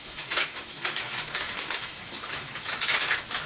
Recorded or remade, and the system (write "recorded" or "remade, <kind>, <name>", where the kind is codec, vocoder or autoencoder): remade, autoencoder, DAC-VAE